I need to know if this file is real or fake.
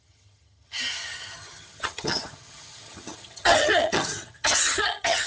fake